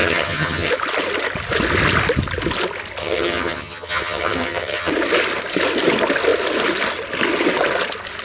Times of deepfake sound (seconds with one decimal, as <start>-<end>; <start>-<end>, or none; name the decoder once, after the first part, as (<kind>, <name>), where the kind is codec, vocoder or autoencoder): 0.0-0.7 (vocoder, HiFi-GAN); 3.0-4.9